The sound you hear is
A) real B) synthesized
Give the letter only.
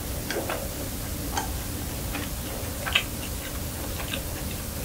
A